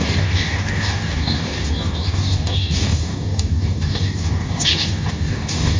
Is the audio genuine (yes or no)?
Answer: no